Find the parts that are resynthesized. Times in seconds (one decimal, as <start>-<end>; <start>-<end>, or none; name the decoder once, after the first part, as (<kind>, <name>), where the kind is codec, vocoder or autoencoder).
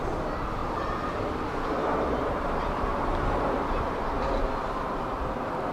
0.6-4.0 (vocoder, BigVGAN v2); 4.6-5.3